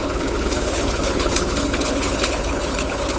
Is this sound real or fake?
fake